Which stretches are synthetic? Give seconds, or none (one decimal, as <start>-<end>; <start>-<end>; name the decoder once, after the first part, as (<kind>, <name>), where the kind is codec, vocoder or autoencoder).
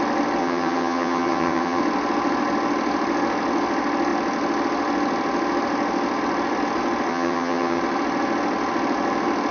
0.4-1.8 (vocoder, HiFi-GAN); 7.1-7.8